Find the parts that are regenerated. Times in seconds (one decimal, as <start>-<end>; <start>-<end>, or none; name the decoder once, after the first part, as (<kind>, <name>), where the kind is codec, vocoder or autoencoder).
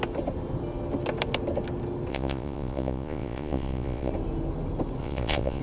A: 2.1-4.1 (vocoder, Vocos); 5.0-5.6